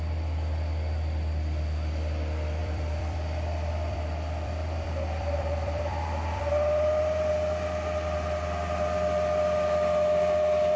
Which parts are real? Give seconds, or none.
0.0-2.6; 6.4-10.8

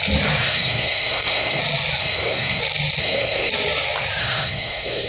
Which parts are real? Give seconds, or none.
0.0-0.4; 1.6-2.0; 2.6-3.0; 3.5-4.2

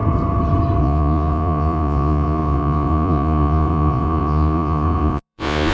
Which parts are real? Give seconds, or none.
0.0-0.8

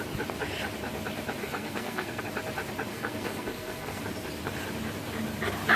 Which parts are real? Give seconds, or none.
0.0-1.4; 2.2-2.9; 4.0-5.8

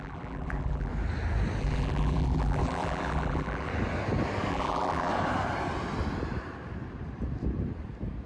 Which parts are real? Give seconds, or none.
0.9-1.6; 3.7-4.5; 5.1-8.3

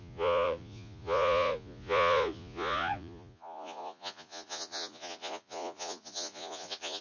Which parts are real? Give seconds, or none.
none